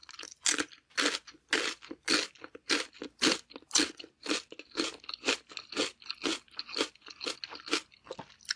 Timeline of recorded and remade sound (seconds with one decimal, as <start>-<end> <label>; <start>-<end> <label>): 0.0-8.6 recorded